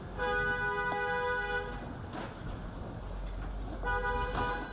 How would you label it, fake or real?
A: real